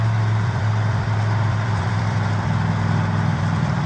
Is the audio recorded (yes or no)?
no